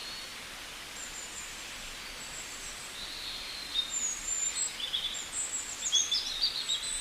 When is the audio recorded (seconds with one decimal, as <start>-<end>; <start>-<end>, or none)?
0.0-7.0